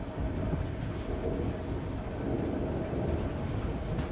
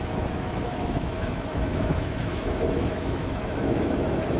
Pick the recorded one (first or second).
first